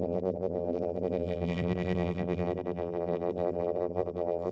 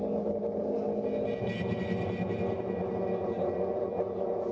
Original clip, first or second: second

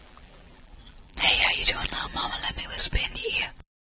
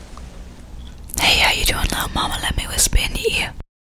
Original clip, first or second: second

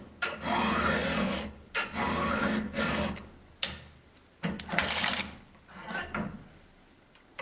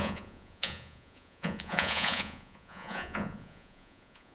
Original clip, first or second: first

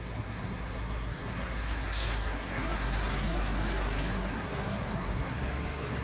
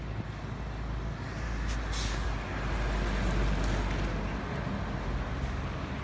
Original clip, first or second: second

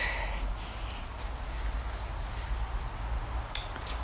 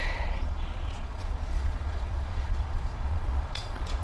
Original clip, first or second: first